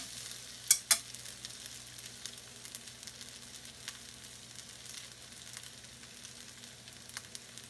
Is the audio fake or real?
real